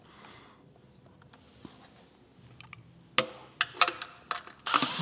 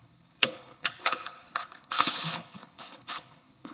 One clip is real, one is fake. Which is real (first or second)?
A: first